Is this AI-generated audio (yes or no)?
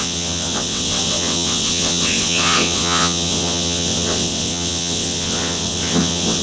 yes